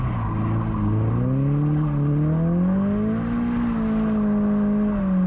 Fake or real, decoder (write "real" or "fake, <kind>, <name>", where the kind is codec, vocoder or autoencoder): real